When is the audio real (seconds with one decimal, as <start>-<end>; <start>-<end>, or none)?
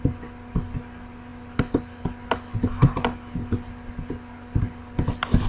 0.0-5.5